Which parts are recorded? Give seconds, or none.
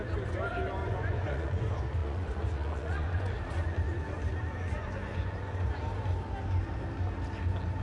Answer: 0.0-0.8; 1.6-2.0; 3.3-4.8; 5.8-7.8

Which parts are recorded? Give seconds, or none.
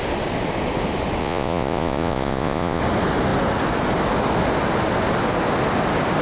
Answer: 0.0-1.2; 2.8-6.2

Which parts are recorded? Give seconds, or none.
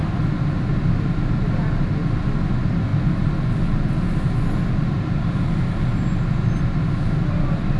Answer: 0.0-7.8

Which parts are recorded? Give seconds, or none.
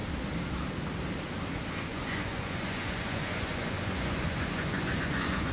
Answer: 0.0-1.9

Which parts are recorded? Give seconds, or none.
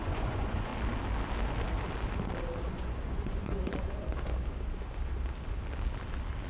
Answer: 0.7-2.7; 4.1-6.5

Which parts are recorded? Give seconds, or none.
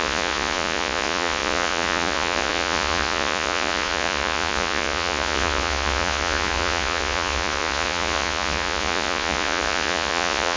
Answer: none